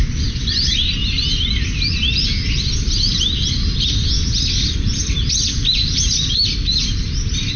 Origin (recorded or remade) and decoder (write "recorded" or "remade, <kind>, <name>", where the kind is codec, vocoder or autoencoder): recorded